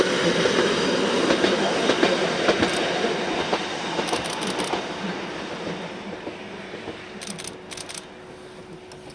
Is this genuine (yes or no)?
yes